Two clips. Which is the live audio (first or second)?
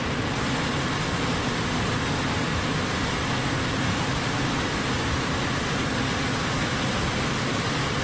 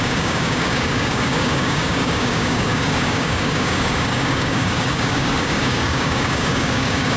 first